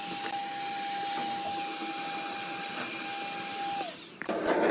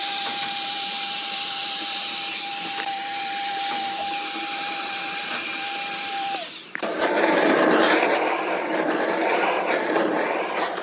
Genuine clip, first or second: first